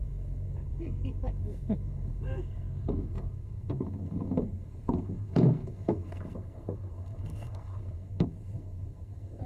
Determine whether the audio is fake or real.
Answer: fake